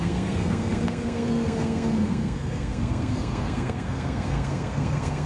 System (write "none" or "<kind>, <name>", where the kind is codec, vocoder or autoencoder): codec, SNAC